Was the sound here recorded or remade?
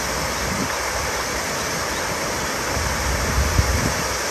recorded